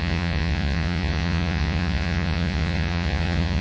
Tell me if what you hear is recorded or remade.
remade